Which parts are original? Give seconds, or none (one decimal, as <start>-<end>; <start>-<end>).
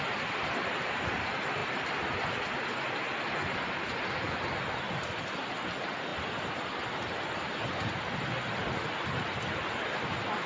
0.0-10.5